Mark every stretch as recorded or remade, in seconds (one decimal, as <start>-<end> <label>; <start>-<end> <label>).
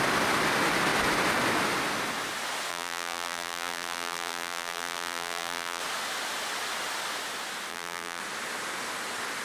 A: 0.0-2.7 recorded; 2.7-5.8 remade; 5.8-7.7 recorded; 7.7-8.2 remade; 8.2-9.4 recorded